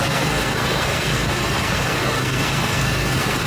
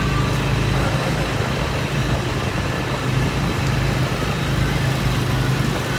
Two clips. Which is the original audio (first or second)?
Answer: second